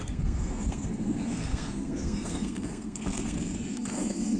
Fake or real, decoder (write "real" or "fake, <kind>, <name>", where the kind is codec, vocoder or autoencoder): fake, codec, SNAC